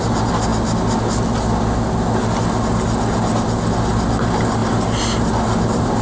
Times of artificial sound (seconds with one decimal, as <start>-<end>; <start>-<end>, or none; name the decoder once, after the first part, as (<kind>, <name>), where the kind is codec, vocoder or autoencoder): none